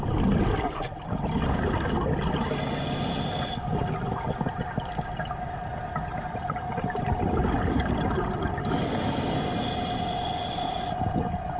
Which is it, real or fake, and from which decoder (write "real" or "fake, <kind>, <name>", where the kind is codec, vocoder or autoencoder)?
real